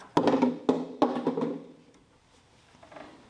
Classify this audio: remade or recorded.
recorded